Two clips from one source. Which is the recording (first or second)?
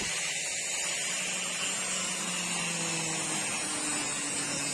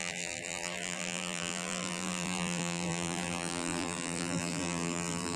first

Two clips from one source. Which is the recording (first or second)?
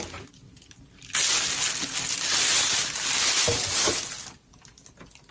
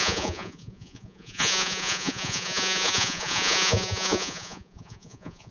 first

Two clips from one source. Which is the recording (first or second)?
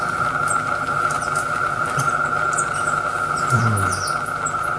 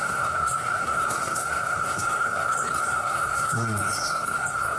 first